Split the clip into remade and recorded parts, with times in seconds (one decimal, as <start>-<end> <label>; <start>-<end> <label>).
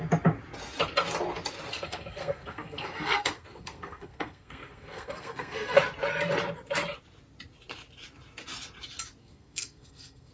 0.0-1.7 recorded; 1.7-5.8 remade; 5.8-9.2 recorded; 9.2-10.3 remade